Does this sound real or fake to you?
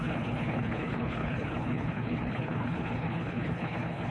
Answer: fake